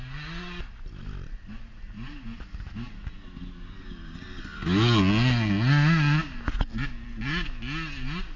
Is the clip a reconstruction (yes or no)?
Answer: no